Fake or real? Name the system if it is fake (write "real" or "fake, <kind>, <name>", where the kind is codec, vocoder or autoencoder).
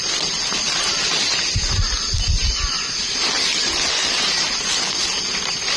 real